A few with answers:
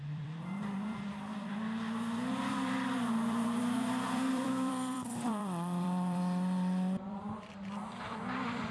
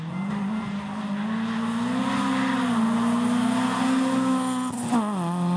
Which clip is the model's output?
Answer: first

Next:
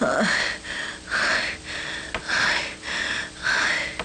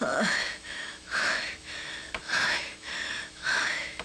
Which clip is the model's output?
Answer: second